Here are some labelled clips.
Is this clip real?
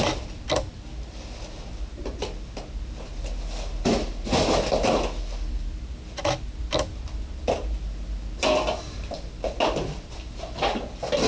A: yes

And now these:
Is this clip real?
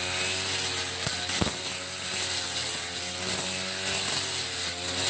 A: yes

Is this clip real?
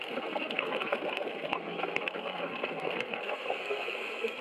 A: no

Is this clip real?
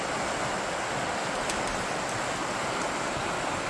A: yes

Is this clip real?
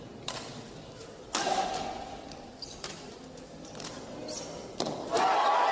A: yes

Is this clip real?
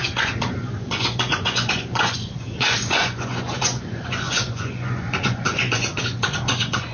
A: no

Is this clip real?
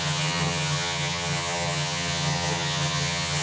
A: no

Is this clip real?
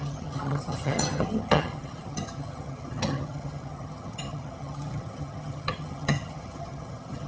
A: no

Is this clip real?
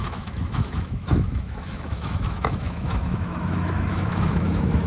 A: no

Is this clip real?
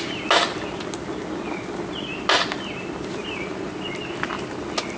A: yes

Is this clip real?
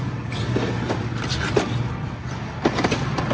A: yes